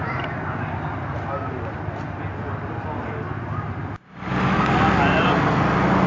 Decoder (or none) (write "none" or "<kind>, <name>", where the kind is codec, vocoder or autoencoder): none